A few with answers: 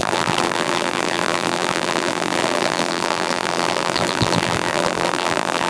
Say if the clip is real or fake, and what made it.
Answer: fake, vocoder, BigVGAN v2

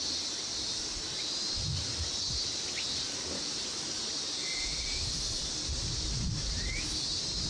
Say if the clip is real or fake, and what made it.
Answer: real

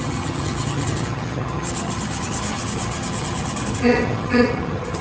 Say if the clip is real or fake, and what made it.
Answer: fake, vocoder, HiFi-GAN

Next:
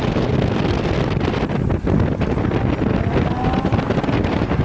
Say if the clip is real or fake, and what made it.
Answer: real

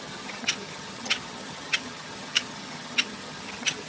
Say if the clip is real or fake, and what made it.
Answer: fake, vocoder, HiFi-GAN